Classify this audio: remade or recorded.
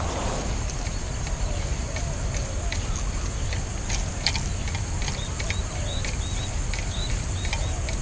recorded